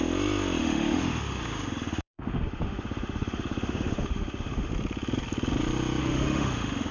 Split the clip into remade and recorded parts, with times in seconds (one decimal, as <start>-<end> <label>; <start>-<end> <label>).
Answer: 0.0-0.6 recorded; 0.6-4.7 remade; 4.7-6.0 recorded; 6.0-6.9 remade